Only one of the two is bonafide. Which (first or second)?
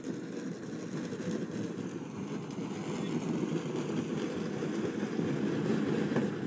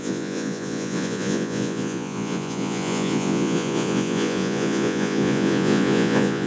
first